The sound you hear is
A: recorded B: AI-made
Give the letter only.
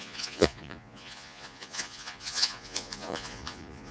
B